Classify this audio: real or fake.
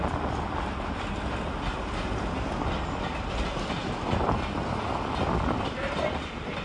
real